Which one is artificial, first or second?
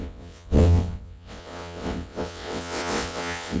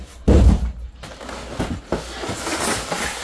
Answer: first